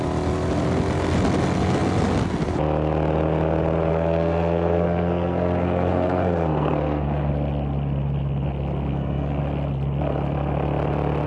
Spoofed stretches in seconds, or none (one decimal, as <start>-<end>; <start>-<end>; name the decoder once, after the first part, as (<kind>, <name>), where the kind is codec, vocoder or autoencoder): 3.9-7.3 (codec, SNAC); 8.9-9.4